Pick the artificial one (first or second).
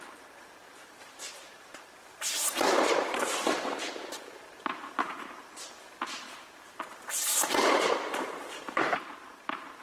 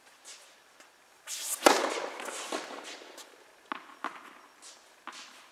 first